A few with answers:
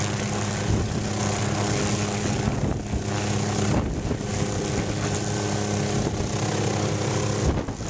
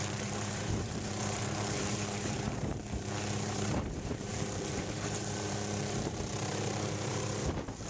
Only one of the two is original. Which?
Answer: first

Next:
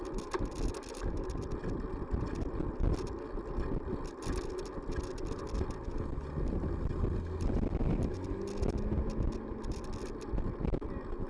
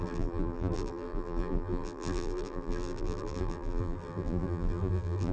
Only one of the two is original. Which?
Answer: first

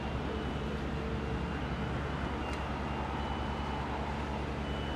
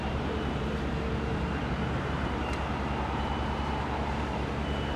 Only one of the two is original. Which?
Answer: first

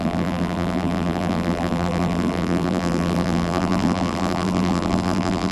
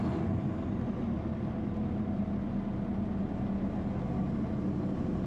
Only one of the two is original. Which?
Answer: second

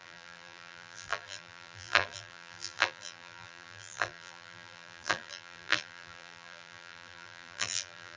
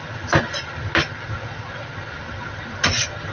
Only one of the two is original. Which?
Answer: second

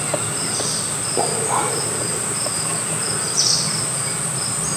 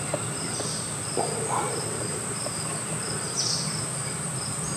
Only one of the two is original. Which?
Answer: first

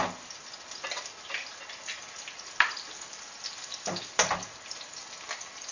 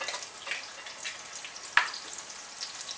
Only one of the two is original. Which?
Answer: second